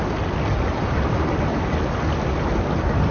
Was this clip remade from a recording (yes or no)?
no